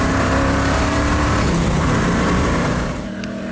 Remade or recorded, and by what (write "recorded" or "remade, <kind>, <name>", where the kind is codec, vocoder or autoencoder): remade, vocoder, BigVGAN v2